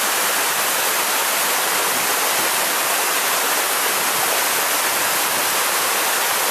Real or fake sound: real